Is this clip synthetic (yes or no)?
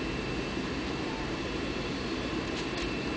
yes